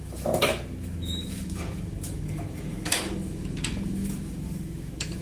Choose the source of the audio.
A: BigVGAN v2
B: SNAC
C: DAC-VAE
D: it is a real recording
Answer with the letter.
C